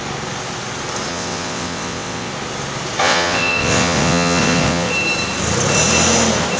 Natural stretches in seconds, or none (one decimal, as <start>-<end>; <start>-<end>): 0.0-1.1; 2.3-3.0; 4.9-6.6